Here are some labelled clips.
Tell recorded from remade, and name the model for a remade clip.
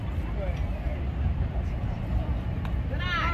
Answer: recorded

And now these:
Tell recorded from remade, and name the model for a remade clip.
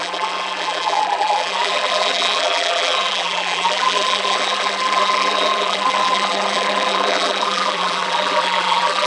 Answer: remade, vocoder, BigVGAN v2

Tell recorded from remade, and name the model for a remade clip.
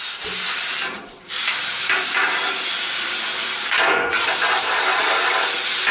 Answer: recorded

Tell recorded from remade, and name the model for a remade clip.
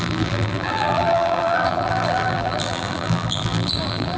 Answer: remade, vocoder, BigVGAN v2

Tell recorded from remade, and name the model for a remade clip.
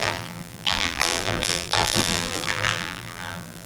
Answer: remade, vocoder, BigVGAN v2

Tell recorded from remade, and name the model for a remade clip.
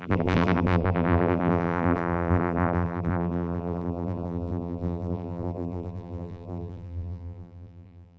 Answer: remade, vocoder, BigVGAN v2